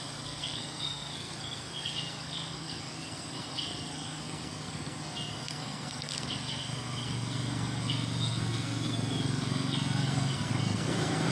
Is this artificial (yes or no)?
yes